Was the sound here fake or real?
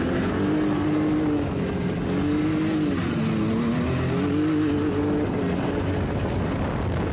real